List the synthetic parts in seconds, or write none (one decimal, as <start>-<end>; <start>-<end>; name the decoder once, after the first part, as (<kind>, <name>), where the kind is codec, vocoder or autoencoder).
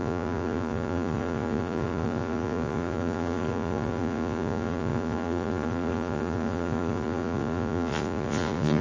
0.0-8.8 (vocoder, Vocos)